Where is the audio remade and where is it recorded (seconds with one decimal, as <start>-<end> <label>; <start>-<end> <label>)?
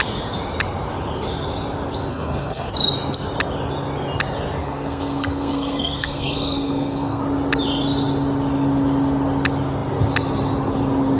0.0-2.1 recorded; 2.1-2.7 remade; 2.7-4.6 recorded; 4.6-7.2 remade; 7.2-11.2 recorded